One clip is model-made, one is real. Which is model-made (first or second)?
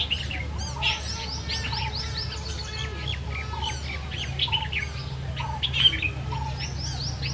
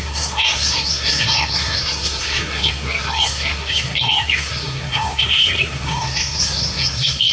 second